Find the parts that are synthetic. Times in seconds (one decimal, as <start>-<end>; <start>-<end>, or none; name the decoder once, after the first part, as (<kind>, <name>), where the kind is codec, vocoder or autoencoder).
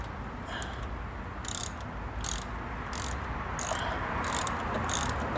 none